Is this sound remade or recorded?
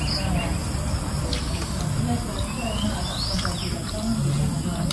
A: recorded